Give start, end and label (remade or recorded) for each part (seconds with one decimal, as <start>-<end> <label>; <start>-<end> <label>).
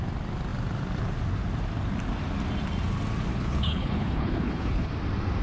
0.0-3.3 recorded; 3.3-4.9 remade; 4.9-5.4 recorded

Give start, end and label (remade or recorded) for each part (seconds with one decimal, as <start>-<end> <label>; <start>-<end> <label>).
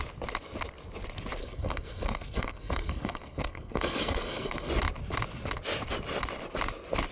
0.0-1.4 recorded; 1.4-4.7 remade; 4.7-7.1 recorded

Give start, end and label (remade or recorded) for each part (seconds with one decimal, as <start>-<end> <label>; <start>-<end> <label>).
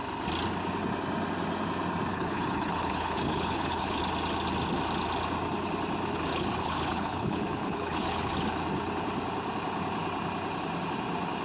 0.0-2.1 recorded; 2.1-4.0 remade; 4.0-6.3 recorded; 6.3-8.3 remade; 8.3-11.4 recorded